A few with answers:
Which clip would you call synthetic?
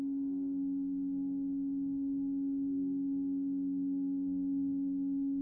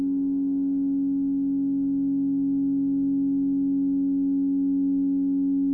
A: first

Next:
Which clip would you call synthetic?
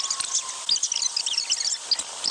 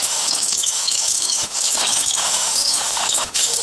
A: second